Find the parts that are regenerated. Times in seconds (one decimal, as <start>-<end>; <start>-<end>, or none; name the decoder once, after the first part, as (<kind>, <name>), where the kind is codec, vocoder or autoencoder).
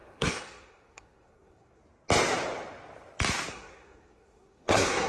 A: 0.0-1.8 (codec, SNAC); 3.5-5.1